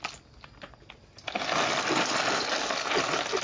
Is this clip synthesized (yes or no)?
no